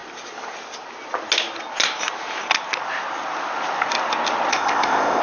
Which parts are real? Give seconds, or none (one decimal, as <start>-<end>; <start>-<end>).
0.0-4.5